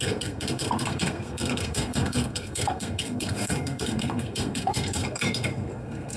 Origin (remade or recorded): remade